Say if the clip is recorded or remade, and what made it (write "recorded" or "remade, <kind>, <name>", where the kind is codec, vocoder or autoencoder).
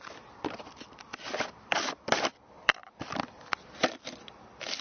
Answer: remade, vocoder, BigVGAN v2